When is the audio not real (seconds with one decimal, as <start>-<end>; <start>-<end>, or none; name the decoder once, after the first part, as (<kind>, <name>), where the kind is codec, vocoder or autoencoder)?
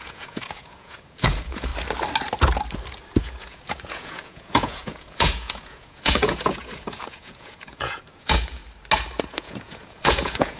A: 0.0-1.7 (vocoder, Vocos); 3.2-8.6; 9.2-10.6